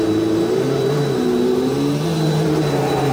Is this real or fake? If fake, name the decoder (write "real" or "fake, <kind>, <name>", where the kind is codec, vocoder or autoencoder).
real